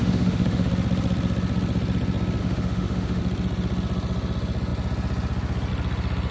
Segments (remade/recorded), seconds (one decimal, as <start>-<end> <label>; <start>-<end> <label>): 0.0-0.7 remade; 0.7-2.4 recorded; 2.4-3.2 remade; 3.2-6.3 recorded